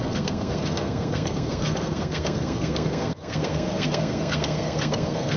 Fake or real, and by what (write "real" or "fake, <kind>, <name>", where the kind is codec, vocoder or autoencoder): fake, codec, SNAC